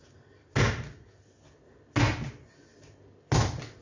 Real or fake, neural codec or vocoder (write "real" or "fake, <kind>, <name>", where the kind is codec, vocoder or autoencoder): real